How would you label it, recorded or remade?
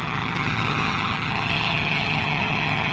remade